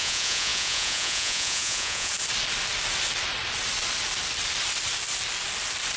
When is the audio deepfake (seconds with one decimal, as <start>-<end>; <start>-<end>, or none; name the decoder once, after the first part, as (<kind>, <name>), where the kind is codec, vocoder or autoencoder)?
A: 0.0-2.1 (vocoder, Vocos)